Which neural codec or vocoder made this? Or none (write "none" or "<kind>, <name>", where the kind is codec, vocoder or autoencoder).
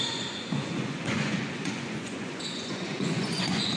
vocoder, Vocos